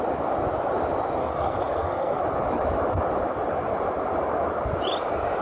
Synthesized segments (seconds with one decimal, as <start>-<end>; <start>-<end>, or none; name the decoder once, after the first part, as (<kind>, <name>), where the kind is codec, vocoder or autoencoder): 1.2-2.2 (codec, SNAC)